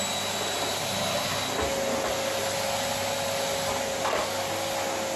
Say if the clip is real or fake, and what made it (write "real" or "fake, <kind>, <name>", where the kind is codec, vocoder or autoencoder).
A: real